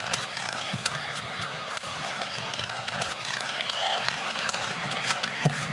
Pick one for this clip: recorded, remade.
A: remade